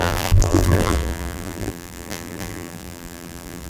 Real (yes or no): no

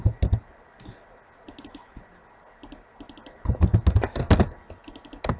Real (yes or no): yes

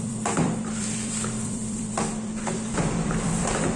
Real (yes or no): no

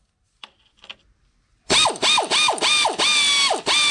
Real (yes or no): yes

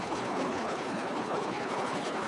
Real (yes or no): no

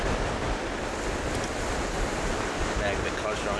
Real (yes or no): yes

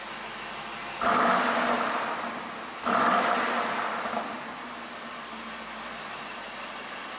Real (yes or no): yes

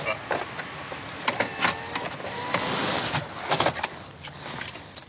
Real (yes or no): yes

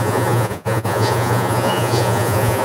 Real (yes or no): no